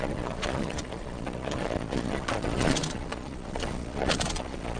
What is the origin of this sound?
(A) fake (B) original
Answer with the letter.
A